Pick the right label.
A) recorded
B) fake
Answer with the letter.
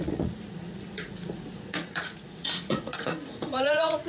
B